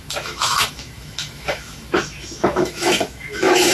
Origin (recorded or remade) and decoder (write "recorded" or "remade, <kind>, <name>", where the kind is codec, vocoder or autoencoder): remade, autoencoder, DAC-VAE